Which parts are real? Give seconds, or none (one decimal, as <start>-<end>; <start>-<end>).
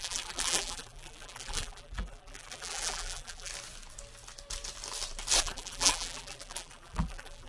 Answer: 3.5-5.4